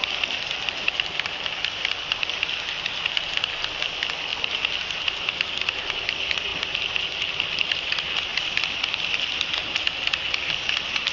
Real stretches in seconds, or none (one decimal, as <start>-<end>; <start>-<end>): 2.6-8.3; 9.6-11.1